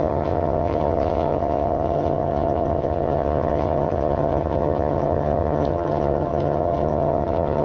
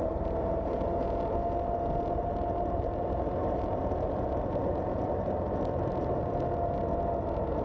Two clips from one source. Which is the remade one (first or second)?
first